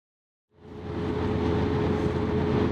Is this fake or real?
real